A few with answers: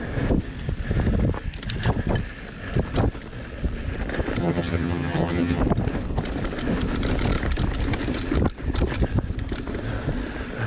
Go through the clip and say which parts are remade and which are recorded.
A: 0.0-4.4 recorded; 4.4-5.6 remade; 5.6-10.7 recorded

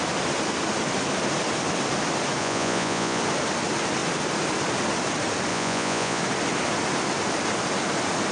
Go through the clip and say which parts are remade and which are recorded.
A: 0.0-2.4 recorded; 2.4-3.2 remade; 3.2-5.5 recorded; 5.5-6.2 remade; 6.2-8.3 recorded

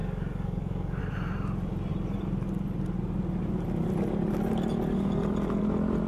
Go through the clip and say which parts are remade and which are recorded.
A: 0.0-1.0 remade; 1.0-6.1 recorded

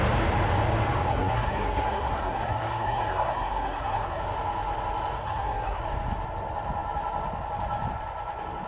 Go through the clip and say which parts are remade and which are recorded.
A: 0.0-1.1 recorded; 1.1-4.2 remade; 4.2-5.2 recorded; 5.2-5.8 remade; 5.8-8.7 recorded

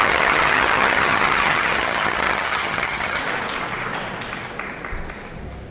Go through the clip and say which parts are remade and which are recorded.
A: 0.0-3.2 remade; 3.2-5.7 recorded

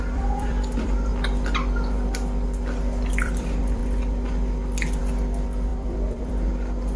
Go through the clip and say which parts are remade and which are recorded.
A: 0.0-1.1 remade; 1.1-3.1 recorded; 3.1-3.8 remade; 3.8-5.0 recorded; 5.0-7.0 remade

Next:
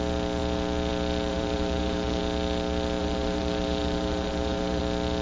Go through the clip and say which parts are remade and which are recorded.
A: 0.0-1.3 recorded; 1.3-2.2 remade; 2.2-3.0 recorded; 3.0-4.8 remade; 4.8-5.2 recorded